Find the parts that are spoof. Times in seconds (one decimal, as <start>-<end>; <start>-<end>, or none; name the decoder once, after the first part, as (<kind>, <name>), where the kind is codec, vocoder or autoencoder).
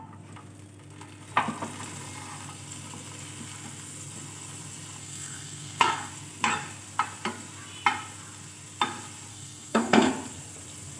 5.0-6.1 (codec, SNAC); 9.3-10.1